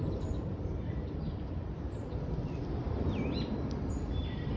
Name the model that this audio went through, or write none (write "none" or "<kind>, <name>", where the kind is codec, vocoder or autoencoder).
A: vocoder, BigVGAN v2